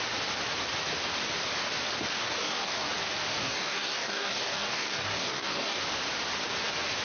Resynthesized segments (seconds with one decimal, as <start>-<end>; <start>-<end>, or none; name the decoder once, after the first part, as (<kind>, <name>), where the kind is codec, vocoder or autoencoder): 2.2-2.9 (codec, DAC); 3.3-5.8